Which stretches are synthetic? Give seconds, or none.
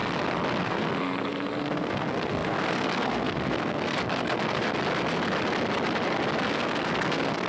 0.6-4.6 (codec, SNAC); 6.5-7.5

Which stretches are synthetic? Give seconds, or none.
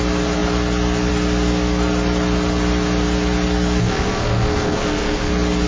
3.8-5.3 (codec, SNAC)